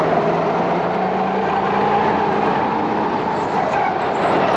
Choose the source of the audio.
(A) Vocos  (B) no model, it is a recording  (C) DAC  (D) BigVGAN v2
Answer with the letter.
B